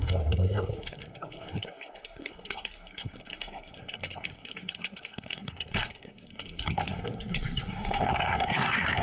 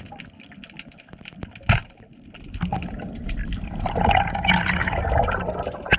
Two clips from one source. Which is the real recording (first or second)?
second